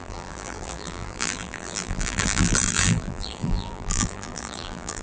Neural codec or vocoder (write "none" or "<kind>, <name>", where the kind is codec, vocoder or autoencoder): vocoder, BigVGAN v2